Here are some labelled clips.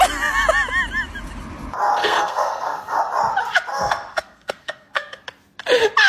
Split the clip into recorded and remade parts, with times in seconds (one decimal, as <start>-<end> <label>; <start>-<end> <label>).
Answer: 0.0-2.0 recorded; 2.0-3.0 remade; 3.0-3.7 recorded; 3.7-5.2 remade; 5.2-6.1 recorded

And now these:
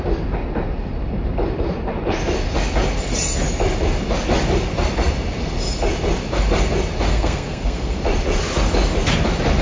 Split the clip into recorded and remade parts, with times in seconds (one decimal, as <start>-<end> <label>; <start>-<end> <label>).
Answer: 0.0-7.1 recorded; 7.1-8.0 remade; 8.0-9.6 recorded

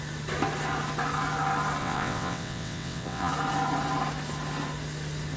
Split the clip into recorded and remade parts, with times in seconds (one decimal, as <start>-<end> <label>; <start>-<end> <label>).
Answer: 0.0-1.8 recorded; 1.8-3.3 remade; 3.3-5.4 recorded